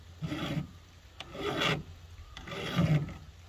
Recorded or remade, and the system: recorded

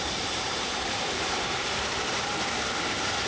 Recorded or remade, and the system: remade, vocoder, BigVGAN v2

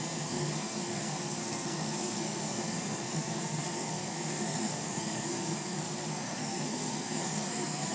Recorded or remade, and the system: remade, codec, SNAC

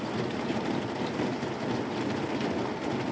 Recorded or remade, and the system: recorded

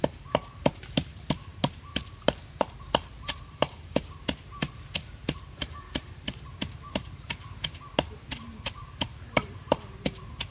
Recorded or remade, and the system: remade, vocoder, BigVGAN v2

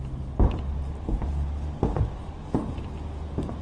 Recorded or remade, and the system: recorded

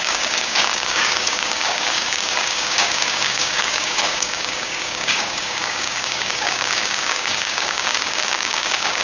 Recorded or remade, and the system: remade, codec, DAC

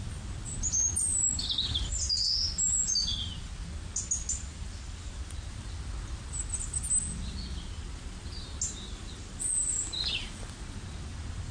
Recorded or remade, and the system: recorded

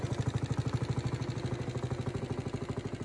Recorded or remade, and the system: recorded